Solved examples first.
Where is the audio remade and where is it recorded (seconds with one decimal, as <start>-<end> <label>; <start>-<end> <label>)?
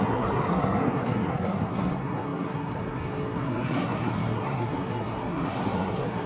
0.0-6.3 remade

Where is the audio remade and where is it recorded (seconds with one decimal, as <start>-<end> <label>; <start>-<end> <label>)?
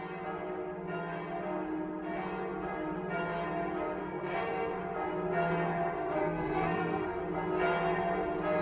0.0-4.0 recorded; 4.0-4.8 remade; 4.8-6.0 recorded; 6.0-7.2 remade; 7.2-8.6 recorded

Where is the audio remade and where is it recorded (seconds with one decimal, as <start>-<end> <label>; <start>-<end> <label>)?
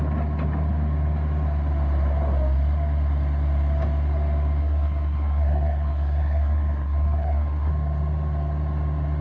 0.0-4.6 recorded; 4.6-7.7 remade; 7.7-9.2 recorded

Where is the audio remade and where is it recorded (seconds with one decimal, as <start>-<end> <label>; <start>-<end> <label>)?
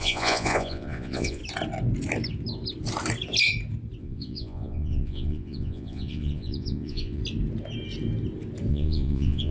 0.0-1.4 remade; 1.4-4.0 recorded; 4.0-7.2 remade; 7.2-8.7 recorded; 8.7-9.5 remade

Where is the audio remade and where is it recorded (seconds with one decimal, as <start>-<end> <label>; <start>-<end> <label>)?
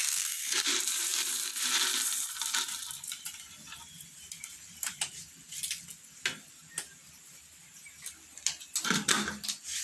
0.0-0.7 remade; 0.7-9.8 recorded